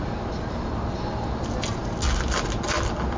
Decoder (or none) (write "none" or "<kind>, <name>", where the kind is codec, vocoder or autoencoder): none